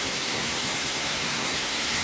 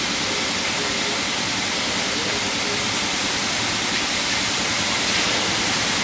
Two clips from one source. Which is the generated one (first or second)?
first